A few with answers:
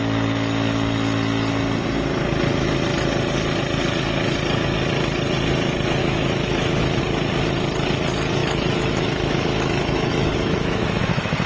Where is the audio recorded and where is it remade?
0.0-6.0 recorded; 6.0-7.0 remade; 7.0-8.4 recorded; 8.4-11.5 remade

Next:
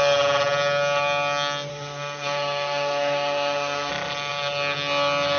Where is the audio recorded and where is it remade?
0.0-1.7 recorded; 1.7-3.9 remade; 3.9-5.4 recorded

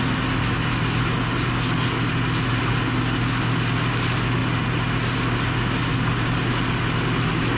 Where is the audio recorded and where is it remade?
0.0-7.6 recorded

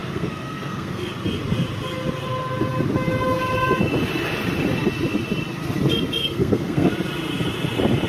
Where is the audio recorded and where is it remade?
0.0-1.1 remade; 1.1-6.2 recorded; 6.2-6.9 remade; 6.9-8.1 recorded